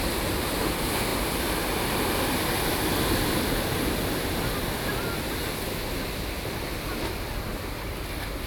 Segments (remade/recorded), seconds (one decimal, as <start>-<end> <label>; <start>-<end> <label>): 0.0-8.5 recorded